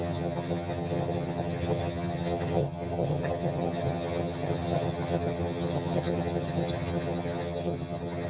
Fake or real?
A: fake